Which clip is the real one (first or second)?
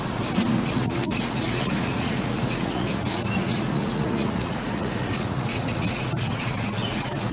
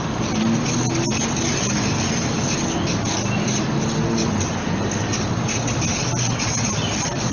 second